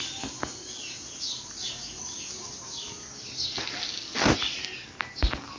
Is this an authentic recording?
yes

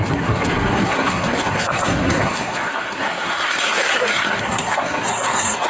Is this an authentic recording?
no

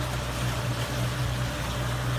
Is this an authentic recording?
yes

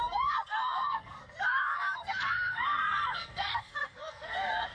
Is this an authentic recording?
no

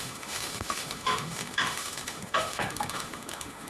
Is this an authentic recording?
no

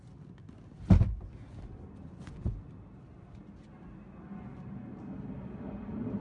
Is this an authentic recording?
yes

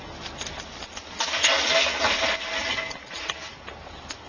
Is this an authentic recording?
yes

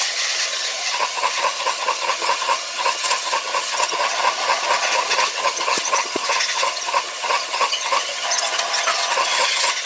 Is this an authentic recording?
no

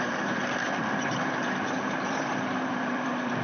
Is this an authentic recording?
no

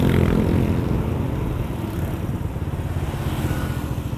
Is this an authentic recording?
yes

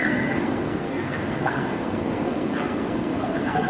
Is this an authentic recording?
no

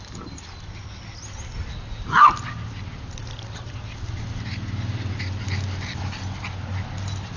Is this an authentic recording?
yes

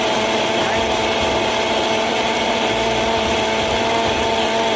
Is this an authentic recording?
yes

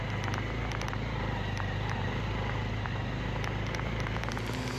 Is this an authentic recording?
yes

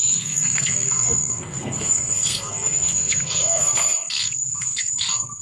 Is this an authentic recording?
no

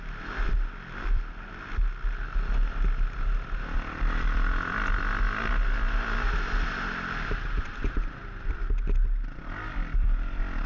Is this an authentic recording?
yes